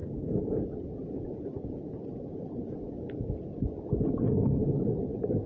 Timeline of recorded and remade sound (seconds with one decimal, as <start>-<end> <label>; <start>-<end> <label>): 0.0-3.3 remade; 3.3-5.5 recorded